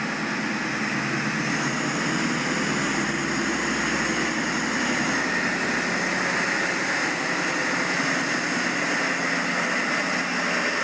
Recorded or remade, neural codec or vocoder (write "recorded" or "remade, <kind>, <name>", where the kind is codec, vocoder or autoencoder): recorded